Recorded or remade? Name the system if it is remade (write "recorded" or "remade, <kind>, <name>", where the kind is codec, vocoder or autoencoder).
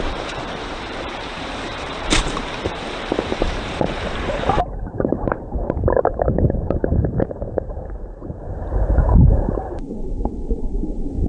remade, vocoder, BigVGAN v2